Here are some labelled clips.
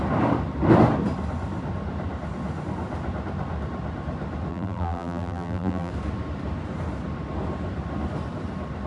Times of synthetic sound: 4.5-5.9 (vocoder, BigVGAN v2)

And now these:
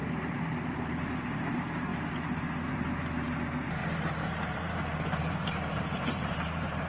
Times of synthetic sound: 0.0-1.9 (vocoder, BigVGAN v2); 2.7-6.9

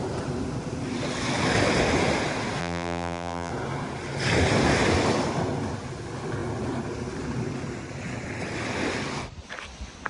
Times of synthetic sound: 2.6-3.5 (vocoder, BigVGAN v2)

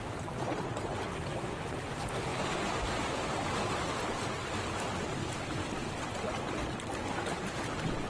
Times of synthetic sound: none

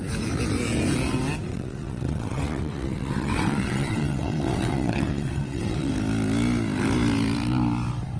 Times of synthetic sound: 1.5-5.9 (vocoder, WaveNeXt)